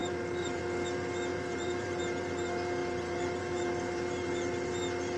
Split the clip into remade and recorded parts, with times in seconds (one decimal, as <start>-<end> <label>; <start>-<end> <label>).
0.0-0.6 remade; 0.6-1.3 recorded; 1.3-2.0 remade; 2.0-2.8 recorded; 2.8-4.7 remade; 4.7-5.2 recorded